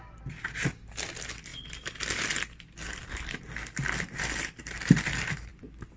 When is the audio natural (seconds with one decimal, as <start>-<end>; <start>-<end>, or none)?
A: 0.0-5.5